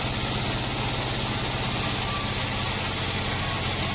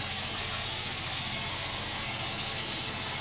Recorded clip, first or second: first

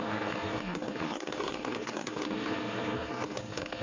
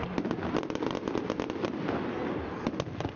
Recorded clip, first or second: second